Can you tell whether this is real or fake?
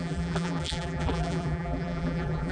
fake